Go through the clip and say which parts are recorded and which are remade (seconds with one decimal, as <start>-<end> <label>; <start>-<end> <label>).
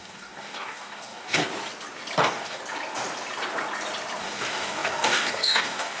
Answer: 0.0-1.5 remade; 1.5-2.2 recorded; 2.2-2.6 remade; 2.6-4.2 recorded; 4.2-6.0 remade